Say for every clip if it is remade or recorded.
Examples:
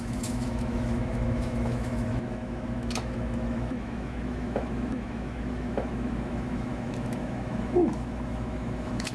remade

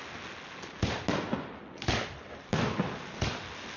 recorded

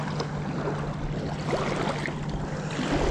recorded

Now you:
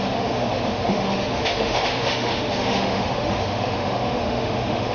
remade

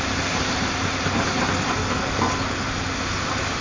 recorded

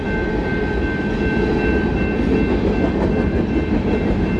recorded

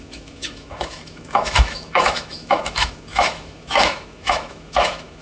remade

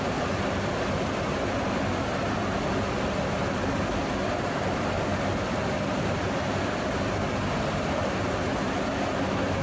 recorded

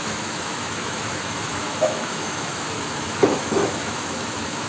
remade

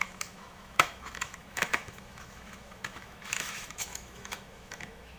remade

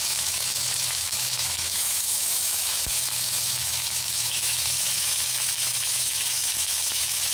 remade